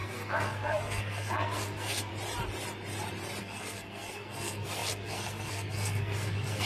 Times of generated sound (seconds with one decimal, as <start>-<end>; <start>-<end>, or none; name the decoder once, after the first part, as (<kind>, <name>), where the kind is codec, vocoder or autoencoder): 0.0-2.1 (codec, SNAC); 3.4-6.7

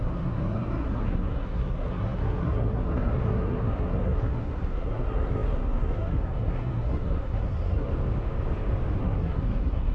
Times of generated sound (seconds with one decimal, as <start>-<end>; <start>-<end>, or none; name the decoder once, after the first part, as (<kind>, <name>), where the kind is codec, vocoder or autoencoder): 0.0-7.9 (codec, SNAC); 9.0-9.9

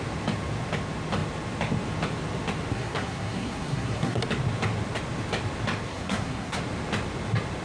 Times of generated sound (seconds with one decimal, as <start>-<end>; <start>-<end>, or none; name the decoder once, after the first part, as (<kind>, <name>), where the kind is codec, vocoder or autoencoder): 2.7-4.2 (codec, SNAC); 5.9-6.6

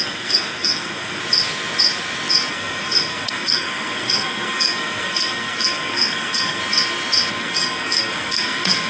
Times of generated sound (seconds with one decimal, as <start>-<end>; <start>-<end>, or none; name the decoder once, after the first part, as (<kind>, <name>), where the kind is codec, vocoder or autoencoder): 0.0-1.2 (codec, SNAC); 2.5-6.6; 7.3-8.9

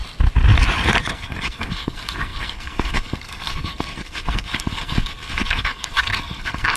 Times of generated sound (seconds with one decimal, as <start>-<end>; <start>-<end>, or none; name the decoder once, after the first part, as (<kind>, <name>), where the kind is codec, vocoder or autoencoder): 1.1-6.8 (codec, SNAC)

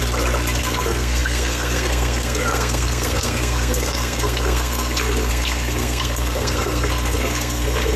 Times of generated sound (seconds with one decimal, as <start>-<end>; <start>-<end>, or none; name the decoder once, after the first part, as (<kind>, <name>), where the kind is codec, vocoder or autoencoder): 0.6-8.0 (codec, SNAC)

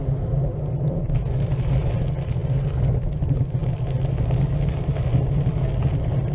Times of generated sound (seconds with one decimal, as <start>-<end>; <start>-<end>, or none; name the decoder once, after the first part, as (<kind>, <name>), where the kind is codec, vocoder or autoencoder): none

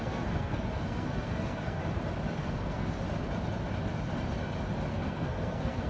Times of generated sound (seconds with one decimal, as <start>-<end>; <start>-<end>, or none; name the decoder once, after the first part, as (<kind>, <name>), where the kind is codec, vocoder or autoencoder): 0.0-1.8 (codec, SNAC); 2.4-3.0; 4.9-5.9